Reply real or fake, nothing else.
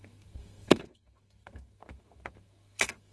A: fake